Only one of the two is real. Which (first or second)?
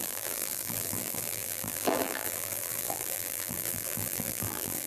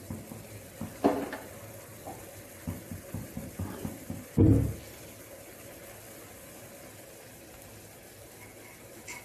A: second